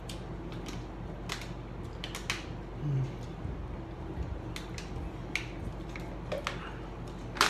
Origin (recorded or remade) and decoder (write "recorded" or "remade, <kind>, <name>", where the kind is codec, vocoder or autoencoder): recorded